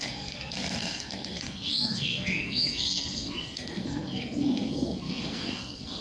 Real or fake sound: fake